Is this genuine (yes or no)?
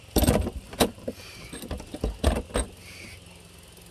yes